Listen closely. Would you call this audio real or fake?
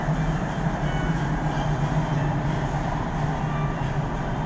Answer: real